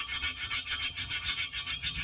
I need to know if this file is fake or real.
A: fake